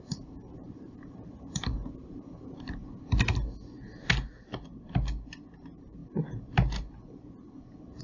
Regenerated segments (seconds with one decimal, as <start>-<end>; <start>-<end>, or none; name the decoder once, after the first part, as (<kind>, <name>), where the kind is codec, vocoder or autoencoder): 0.0-2.8 (vocoder, BigVGAN v2); 5.5-6.0